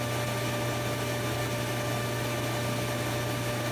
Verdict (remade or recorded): recorded